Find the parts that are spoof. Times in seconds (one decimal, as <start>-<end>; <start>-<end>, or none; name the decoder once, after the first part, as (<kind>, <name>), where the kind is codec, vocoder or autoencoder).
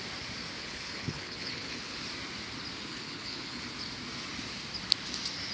0.6-2.0 (codec, HILCodec); 2.9-3.6